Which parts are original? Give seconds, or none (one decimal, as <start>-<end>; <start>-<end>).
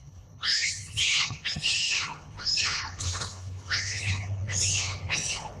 none